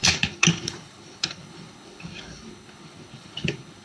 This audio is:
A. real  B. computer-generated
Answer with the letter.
B